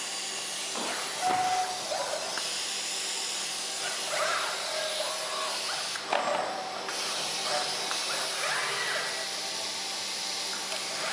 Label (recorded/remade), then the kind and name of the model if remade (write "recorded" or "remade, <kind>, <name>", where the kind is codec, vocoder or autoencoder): recorded